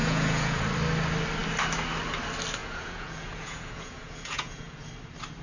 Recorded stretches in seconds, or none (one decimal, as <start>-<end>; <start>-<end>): 0.6-2.6; 4.9-5.4